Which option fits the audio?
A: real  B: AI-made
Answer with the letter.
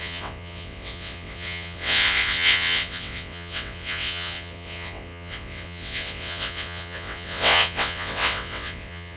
B